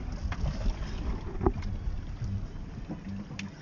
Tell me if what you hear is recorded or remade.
recorded